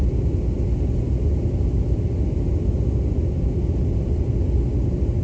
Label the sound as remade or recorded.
recorded